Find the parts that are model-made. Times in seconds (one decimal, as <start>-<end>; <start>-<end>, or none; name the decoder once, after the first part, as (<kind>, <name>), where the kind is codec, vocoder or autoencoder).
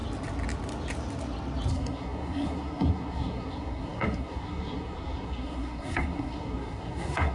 1.7-7.3 (codec, SNAC)